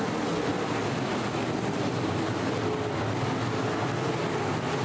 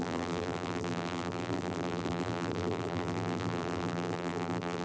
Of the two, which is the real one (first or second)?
first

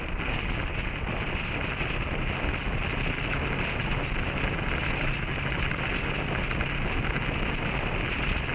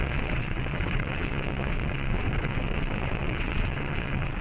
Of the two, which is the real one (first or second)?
first